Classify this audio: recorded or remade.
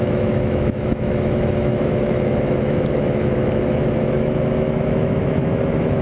remade